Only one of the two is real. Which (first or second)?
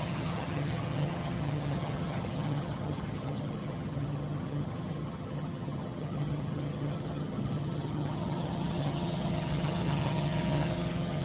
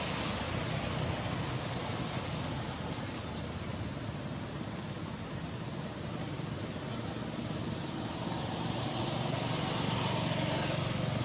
second